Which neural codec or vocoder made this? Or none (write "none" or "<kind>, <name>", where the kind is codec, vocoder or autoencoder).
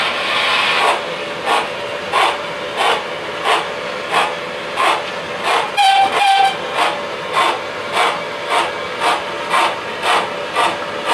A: none